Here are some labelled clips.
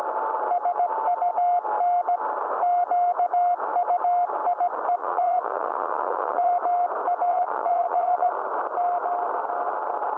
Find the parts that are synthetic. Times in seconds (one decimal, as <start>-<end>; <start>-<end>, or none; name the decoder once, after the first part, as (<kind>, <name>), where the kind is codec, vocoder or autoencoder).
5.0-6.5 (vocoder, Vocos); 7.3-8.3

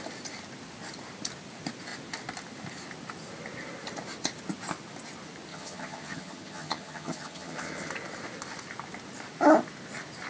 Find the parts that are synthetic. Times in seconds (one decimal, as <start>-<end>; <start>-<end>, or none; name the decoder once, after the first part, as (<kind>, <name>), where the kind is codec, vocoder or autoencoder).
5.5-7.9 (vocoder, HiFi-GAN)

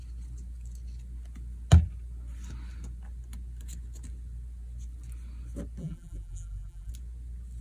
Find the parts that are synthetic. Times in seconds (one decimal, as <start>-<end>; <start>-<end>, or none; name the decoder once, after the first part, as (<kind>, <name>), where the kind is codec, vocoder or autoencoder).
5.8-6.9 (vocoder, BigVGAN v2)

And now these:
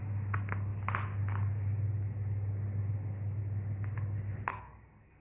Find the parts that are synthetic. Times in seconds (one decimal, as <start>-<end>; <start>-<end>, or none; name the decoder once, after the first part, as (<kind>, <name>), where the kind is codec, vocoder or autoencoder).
4.5-5.2 (codec, SNAC)

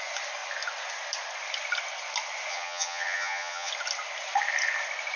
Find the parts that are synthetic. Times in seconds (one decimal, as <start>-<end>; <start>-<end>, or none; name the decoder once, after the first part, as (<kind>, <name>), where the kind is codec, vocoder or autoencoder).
2.5-3.7 (vocoder, HiFi-GAN)

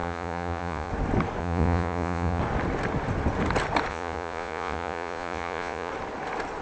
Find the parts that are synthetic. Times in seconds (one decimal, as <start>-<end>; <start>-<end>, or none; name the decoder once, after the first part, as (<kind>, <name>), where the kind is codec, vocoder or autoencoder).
0.0-0.9 (vocoder, Vocos); 1.4-2.4; 3.9-5.9

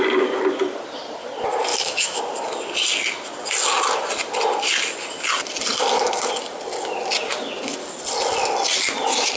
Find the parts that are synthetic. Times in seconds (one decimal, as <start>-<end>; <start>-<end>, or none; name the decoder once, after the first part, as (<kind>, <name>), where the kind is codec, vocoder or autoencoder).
1.7-2.2 (autoencoder, DAC-VAE)